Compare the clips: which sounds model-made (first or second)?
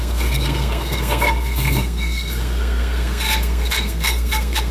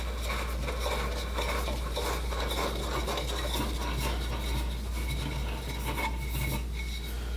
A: first